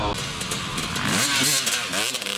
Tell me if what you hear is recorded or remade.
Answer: recorded